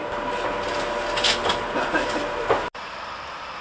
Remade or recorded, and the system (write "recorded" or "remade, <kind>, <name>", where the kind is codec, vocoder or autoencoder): recorded